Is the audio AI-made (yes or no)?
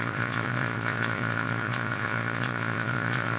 yes